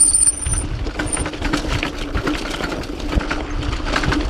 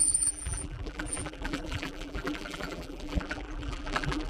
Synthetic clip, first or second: second